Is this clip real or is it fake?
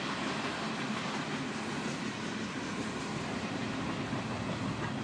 real